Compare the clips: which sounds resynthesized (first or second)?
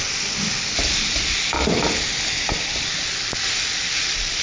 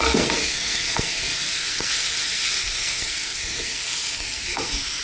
second